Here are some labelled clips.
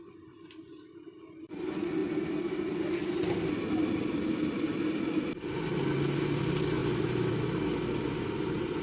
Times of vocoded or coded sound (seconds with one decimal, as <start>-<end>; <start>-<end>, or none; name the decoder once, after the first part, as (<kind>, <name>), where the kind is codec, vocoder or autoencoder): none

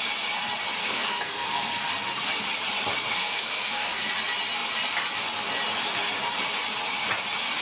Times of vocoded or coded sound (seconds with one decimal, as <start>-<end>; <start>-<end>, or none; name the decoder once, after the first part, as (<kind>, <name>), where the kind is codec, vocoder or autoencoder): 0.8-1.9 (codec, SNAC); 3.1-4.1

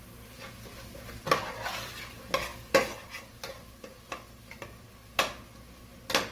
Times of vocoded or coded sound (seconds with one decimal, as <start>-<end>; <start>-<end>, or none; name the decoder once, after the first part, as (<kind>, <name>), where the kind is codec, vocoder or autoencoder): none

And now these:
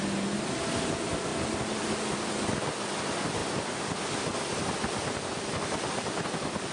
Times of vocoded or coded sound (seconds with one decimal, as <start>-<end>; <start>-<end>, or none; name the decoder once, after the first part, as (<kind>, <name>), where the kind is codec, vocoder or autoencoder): none

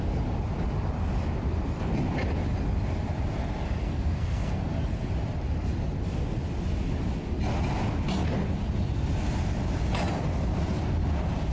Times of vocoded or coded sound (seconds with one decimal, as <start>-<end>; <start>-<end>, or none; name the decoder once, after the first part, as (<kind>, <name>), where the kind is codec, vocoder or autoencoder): 3.8-4.7 (codec, SNAC)